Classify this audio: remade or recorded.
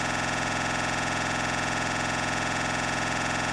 remade